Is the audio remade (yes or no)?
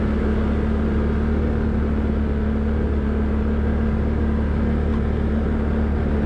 no